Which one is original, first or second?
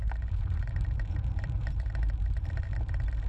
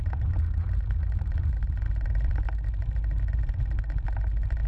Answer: second